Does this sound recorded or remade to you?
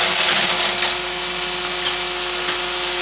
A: recorded